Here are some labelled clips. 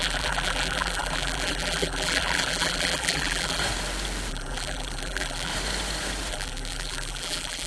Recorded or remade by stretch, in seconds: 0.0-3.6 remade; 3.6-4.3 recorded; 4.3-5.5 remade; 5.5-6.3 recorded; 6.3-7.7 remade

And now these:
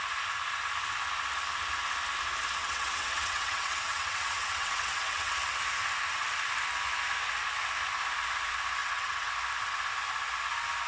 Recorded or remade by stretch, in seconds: 0.0-2.6 recorded; 2.6-5.3 remade; 5.3-8.8 recorded; 8.8-9.3 remade; 9.3-10.9 recorded

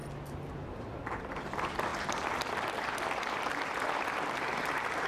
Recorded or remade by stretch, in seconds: 0.0-5.1 recorded

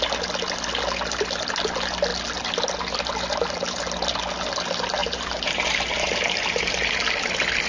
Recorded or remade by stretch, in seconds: 0.0-5.0 recorded; 5.0-6.9 remade; 6.9-7.7 recorded

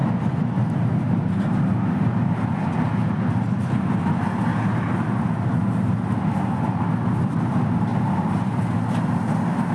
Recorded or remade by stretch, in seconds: 0.0-2.6 remade; 2.6-4.5 recorded; 4.5-5.3 remade; 5.3-7.9 recorded; 7.9-8.6 remade; 8.6-9.7 recorded